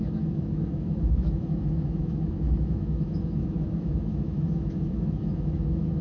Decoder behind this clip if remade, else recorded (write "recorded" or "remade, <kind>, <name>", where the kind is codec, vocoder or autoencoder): remade, autoencoder, DAC-VAE